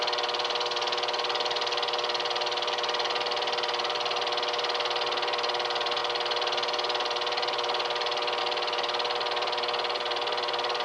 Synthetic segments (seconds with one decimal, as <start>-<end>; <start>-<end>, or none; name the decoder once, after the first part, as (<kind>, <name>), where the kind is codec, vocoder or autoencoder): none